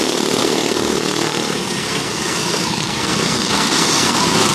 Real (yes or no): no